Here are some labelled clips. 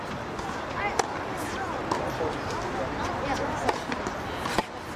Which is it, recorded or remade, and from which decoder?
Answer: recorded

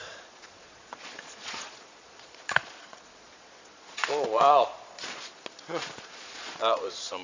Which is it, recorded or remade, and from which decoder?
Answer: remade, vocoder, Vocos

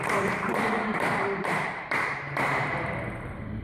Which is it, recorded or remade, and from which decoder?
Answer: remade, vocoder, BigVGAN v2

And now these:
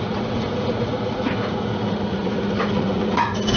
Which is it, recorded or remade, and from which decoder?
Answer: remade, vocoder, Vocos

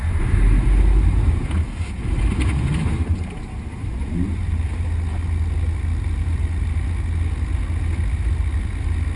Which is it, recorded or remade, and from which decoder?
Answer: recorded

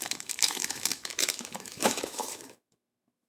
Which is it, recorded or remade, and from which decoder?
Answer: remade, autoencoder, DAC-VAE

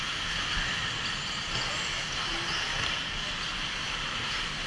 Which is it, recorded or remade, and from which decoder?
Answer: recorded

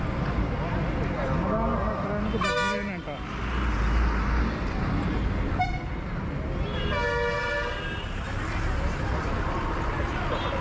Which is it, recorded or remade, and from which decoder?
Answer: recorded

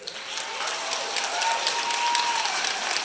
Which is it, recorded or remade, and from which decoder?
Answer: recorded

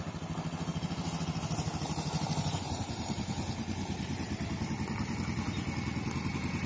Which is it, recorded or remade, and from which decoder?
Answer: recorded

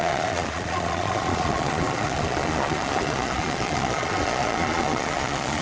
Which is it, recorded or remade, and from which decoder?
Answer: remade, vocoder, Vocos